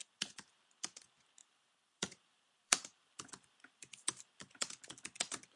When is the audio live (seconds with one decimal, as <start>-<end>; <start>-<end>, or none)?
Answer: 0.6-1.4; 4.7-5.6